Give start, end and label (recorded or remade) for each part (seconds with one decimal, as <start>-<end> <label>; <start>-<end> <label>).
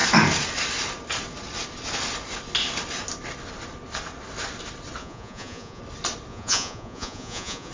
0.0-5.0 recorded; 5.0-5.8 remade; 5.8-6.3 recorded; 6.3-7.7 remade